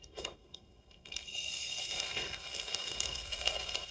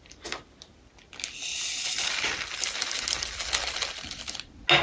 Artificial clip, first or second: first